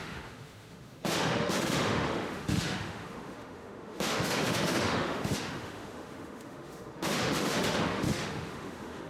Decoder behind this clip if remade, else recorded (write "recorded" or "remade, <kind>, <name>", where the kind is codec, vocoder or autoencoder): remade, autoencoder, DAC-VAE